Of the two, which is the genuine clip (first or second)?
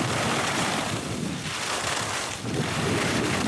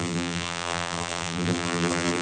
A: first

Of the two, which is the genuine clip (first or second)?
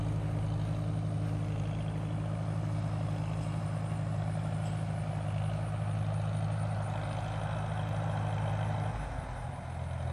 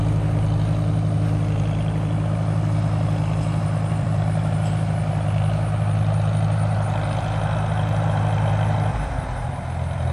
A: first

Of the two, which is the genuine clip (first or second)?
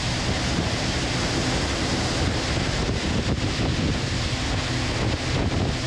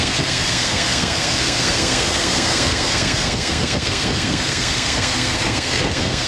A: first